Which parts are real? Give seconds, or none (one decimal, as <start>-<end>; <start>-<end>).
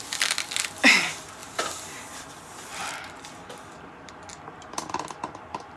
0.0-1.4; 4.1-5.8